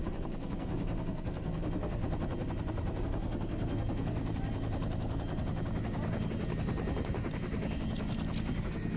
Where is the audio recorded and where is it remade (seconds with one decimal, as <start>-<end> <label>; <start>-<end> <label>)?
0.0-2.0 remade; 2.0-3.0 recorded; 3.0-4.2 remade; 4.2-8.6 recorded; 8.6-9.0 remade